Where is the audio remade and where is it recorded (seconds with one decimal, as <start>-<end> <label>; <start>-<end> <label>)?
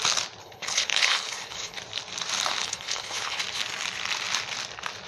0.0-0.4 recorded; 0.4-1.8 remade; 1.8-2.6 recorded; 2.6-3.4 remade; 3.4-5.1 recorded